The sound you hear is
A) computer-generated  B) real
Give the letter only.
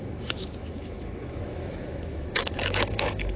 A